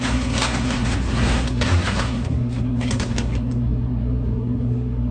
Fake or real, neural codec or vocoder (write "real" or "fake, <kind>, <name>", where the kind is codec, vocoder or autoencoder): fake, codec, SNAC